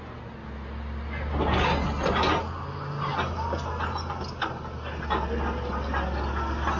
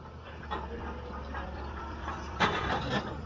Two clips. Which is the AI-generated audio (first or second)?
second